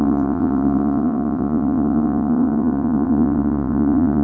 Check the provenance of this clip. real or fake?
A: fake